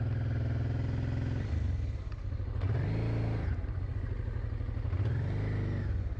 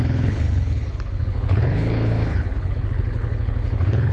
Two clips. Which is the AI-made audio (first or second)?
second